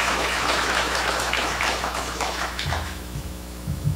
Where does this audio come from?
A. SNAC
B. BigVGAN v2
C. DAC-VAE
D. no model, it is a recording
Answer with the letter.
C